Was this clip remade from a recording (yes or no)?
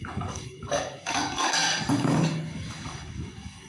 yes